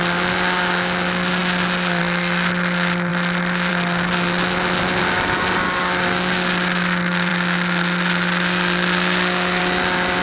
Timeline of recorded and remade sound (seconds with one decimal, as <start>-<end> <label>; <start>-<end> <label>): 0.0-10.2 recorded